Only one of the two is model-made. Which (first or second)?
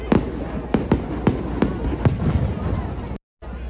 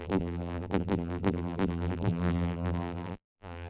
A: second